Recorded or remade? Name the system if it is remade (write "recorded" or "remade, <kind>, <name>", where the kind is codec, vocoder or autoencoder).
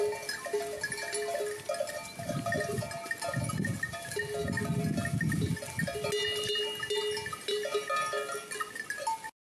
recorded